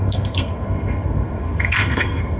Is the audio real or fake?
fake